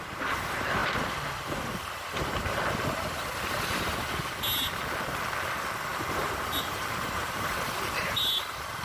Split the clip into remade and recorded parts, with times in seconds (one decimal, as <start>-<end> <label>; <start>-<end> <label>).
0.0-5.9 recorded; 5.9-8.3 remade; 8.3-8.8 recorded